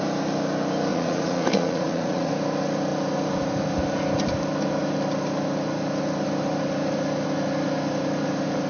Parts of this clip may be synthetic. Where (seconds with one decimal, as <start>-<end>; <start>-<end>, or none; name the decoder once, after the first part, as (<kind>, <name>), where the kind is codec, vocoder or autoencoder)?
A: 0.9-2.3 (vocoder, Vocos)